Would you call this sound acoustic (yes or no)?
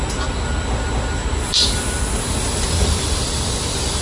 yes